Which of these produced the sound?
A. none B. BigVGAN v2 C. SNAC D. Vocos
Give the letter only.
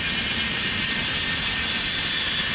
A